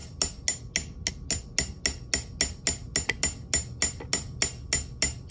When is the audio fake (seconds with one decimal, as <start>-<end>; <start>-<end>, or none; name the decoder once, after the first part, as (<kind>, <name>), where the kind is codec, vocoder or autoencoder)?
none